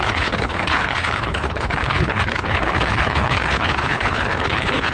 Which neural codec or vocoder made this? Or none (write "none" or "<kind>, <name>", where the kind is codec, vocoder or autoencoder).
codec, HILCodec